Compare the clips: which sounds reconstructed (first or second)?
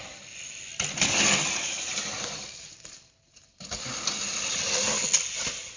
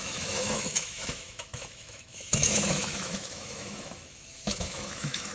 second